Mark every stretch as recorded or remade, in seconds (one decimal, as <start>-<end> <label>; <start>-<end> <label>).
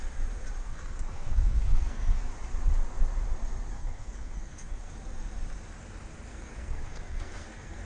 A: 0.0-0.6 recorded; 0.6-2.2 remade; 2.2-3.7 recorded; 3.7-4.9 remade; 4.9-6.3 recorded; 6.3-7.8 remade